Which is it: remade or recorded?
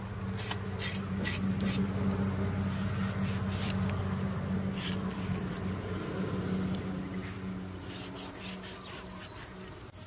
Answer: recorded